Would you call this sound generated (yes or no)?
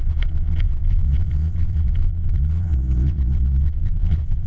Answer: yes